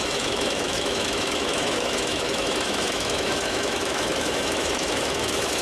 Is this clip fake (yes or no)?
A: yes